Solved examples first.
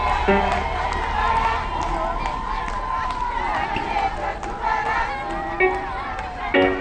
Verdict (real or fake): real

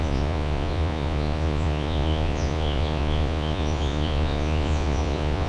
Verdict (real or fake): fake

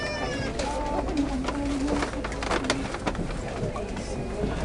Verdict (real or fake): real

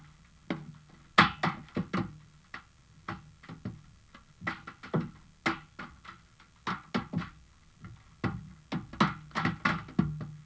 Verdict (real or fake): real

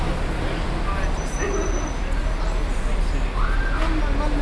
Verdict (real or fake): real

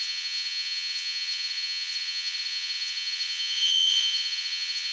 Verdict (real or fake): fake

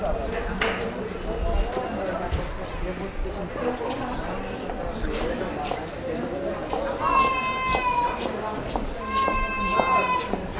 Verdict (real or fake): real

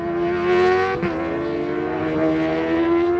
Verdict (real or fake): real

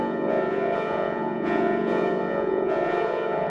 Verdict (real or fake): fake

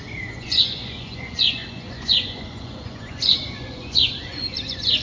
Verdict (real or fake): fake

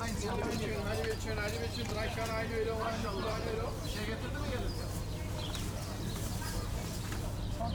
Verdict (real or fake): real